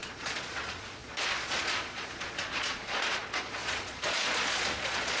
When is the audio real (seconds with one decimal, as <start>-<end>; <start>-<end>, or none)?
none